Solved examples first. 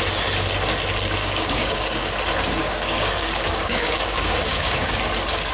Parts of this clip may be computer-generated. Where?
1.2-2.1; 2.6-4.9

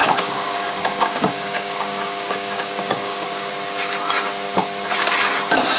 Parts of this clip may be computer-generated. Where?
0.0-3.5

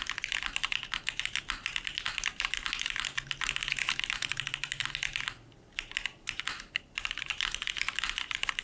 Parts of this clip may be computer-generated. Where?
none

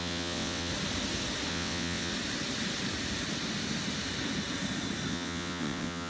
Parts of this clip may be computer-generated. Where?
0.0-0.7; 1.5-2.1; 5.1-6.1

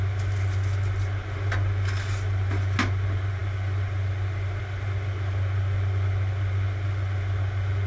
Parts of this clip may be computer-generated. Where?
none

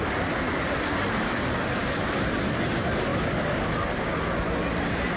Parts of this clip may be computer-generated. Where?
none

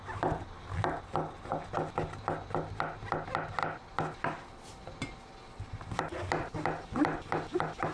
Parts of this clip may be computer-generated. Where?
none